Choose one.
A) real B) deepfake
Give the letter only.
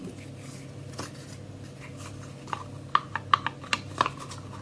A